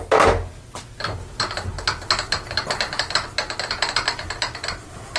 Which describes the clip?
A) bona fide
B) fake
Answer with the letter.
A